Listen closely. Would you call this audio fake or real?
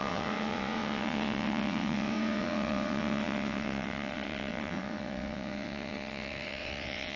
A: fake